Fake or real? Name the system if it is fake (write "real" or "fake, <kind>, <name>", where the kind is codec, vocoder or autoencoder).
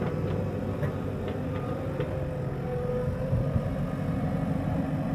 real